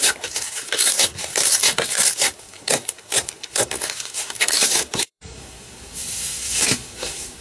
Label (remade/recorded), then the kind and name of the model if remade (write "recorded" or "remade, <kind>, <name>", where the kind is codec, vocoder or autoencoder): remade, codec, SNAC